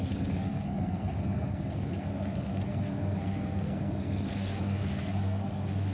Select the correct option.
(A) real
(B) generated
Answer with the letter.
B